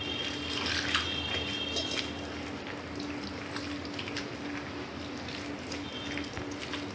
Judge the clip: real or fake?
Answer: real